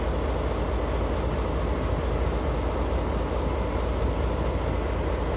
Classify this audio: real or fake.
real